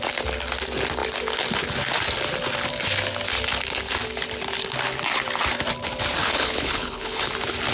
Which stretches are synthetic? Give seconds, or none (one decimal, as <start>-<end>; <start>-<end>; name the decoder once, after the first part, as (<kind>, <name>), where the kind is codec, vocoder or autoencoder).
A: 6.2-7.3 (codec, HILCodec)